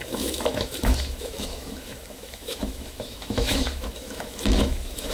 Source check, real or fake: fake